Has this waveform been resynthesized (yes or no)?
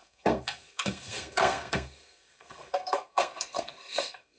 yes